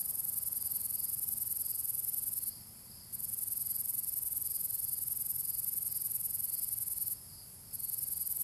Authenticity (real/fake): real